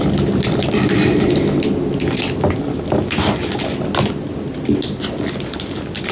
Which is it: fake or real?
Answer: real